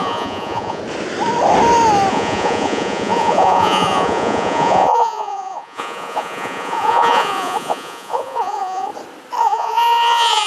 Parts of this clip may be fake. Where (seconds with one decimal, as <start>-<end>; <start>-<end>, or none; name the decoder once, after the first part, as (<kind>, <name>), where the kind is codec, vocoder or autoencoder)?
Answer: 0.0-0.8 (vocoder, Vocos); 2.1-8.9; 9.4-10.5